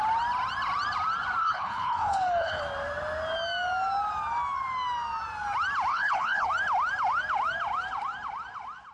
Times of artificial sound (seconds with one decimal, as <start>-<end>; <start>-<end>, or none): 1.4-2.6; 5.9-6.5

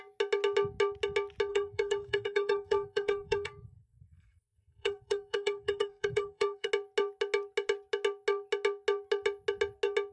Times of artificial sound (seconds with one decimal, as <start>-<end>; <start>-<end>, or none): 1.5-6.7

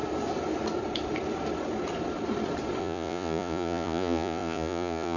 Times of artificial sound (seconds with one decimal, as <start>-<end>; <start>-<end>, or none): 2.8-5.2

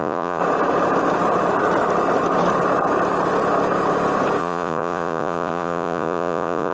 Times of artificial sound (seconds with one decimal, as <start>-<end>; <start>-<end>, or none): 0.0-0.4; 4.4-6.7

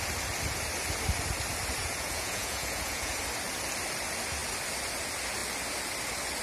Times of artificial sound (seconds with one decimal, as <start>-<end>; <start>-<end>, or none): 1.8-3.2

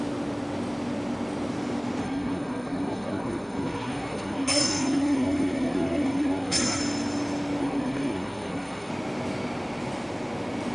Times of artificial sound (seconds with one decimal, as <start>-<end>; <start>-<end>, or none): 2.0-6.8; 7.6-8.9